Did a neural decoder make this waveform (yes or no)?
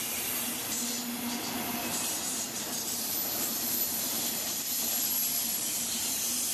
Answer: yes